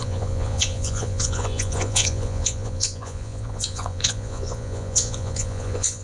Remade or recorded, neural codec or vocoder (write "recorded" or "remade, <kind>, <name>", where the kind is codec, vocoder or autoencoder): remade, vocoder, Vocos